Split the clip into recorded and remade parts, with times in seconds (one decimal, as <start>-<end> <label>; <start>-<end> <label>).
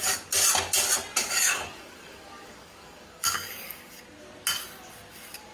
0.0-1.2 recorded; 1.2-4.0 remade; 4.0-5.5 recorded